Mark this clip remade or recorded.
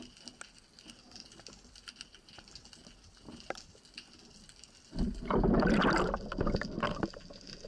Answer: recorded